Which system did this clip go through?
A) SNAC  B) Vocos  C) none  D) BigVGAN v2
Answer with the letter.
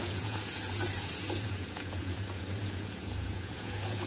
B